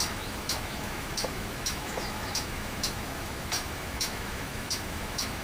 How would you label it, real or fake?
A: fake